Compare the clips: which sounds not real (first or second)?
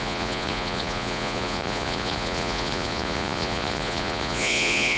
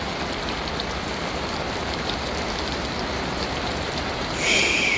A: first